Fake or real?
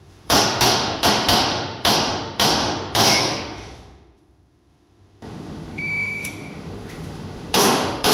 fake